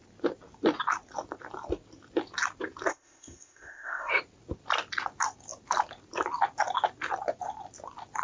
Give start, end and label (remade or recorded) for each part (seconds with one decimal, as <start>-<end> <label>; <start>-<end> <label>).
0.0-2.9 recorded; 2.9-4.1 remade; 4.1-8.2 recorded